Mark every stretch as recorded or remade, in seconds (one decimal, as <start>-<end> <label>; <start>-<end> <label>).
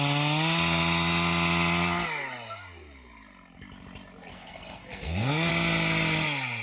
0.0-4.3 recorded; 4.3-5.5 remade; 5.5-6.6 recorded